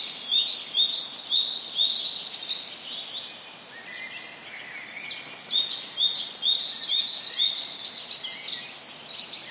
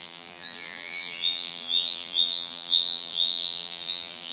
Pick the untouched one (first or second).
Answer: first